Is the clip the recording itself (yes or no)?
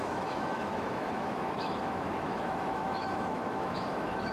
no